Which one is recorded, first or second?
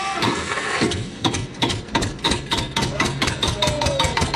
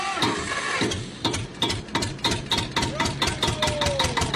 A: second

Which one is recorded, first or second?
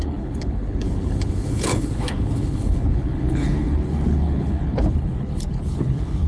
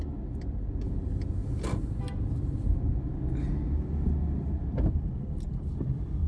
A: second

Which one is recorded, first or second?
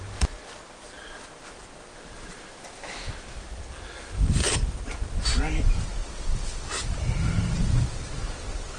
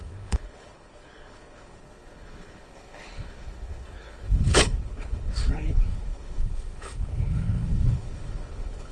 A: first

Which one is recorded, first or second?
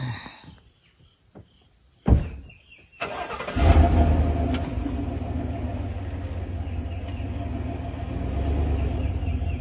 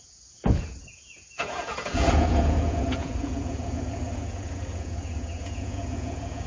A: first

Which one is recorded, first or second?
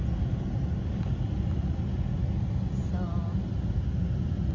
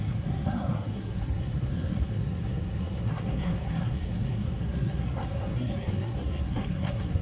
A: first